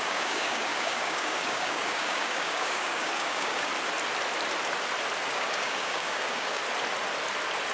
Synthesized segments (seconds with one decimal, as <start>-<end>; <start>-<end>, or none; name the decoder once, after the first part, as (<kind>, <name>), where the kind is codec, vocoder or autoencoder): 0.0-3.7 (codec, DAC); 5.3-6.6